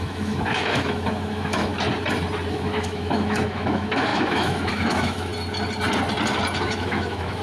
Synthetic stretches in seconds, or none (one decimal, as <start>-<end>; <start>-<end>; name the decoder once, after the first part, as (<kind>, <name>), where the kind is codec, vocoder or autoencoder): 0.0-1.7 (autoencoder, DAC-VAE); 2.5-5.3; 6.6-7.4